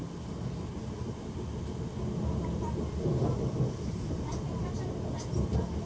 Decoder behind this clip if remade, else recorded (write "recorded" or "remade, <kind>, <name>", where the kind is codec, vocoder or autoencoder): recorded